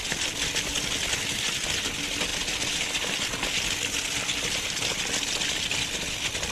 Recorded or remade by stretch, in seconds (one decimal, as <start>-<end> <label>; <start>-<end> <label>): 0.0-6.5 recorded